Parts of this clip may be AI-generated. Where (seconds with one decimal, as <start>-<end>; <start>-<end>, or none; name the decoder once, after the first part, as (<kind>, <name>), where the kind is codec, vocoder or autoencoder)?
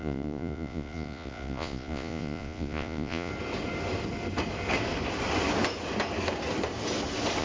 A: 0.0-3.3 (vocoder, Vocos)